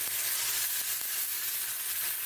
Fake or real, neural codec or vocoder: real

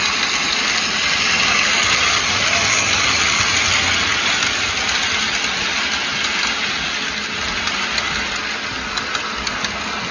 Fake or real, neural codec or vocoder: real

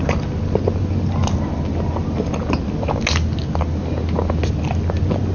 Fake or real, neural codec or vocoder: real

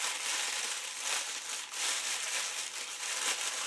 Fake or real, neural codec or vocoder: fake, vocoder, BigVGAN v2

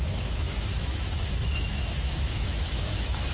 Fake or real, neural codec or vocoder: fake, autoencoder, DAC-VAE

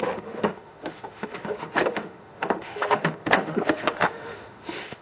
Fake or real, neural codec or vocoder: fake, autoencoder, DAC-VAE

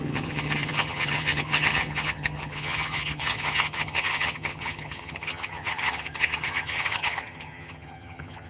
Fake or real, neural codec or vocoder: fake, vocoder, HiFi-GAN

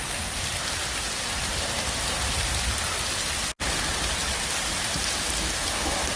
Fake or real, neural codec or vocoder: real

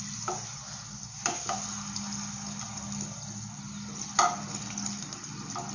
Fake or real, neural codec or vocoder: real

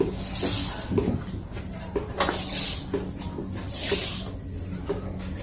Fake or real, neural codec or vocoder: real